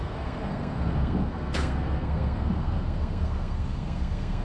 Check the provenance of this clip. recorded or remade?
remade